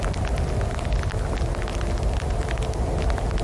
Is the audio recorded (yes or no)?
yes